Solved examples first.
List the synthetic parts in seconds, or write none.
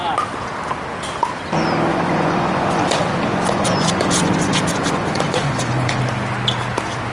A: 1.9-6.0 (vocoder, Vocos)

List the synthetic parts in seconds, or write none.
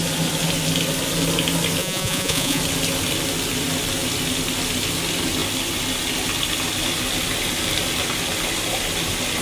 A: 1.8-2.6 (vocoder, Vocos)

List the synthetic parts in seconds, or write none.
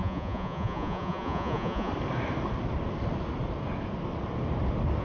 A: 0.0-1.9 (vocoder, Vocos)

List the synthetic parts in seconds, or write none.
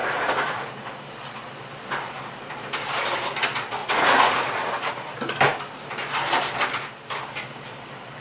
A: 0.0-0.8 (vocoder, Vocos); 3.8-5.1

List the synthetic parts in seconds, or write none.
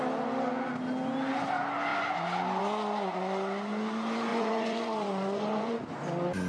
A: 4.3-5.7 (vocoder, Vocos)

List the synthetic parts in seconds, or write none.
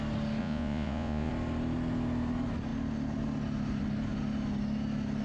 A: 0.4-1.3 (vocoder, Vocos)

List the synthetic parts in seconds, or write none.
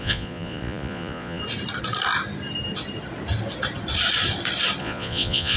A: 0.0-1.4 (vocoder, Vocos); 4.8-5.6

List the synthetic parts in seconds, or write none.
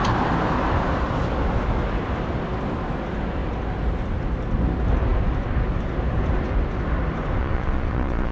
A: 7.4-8.3 (vocoder, Vocos)